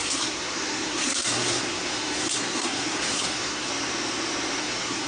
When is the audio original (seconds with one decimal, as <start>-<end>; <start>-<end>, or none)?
3.7-4.6